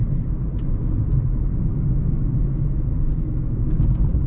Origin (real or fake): real